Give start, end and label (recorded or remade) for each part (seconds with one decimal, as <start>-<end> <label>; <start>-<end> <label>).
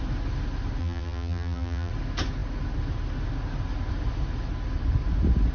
0.0-0.8 recorded; 0.8-1.9 remade; 1.9-5.5 recorded